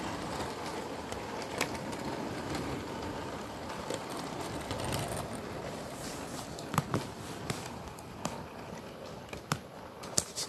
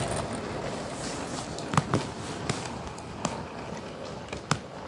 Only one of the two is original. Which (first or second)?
second